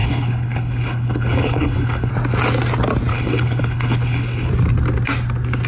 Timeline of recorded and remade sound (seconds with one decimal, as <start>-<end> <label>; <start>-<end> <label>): 0.0-2.1 remade; 2.1-3.1 recorded; 3.1-4.5 remade; 4.5-5.7 recorded